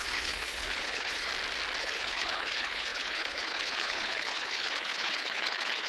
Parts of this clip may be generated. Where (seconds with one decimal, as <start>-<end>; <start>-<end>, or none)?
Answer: 0.0-1.3; 1.8-5.9